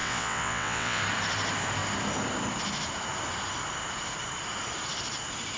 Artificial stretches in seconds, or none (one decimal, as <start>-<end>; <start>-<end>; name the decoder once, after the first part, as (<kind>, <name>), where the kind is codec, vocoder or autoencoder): 0.0-1.0 (vocoder, WaveNeXt)